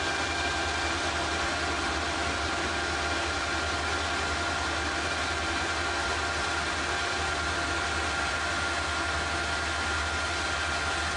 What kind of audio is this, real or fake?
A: real